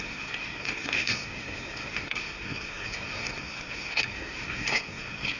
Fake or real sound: fake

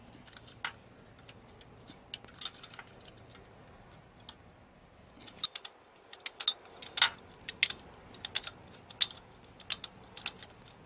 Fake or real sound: real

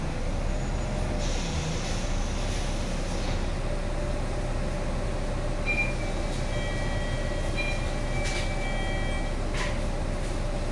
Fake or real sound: real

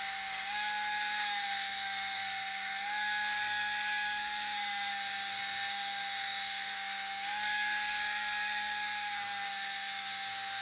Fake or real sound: fake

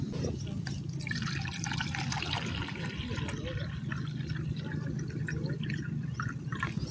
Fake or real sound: real